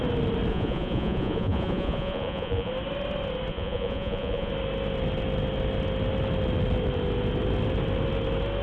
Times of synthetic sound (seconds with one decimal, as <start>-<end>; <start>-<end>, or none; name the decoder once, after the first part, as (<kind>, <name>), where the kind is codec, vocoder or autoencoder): 0.5-2.7 (vocoder, Vocos); 3.5-4.5